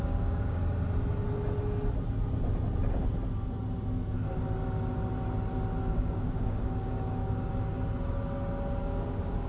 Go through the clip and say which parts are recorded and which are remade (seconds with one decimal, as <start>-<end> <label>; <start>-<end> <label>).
0.0-0.6 remade; 0.6-5.8 recorded; 5.8-7.5 remade; 7.5-8.8 recorded; 8.8-9.5 remade